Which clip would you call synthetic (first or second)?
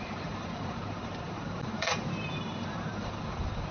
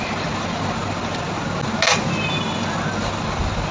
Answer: first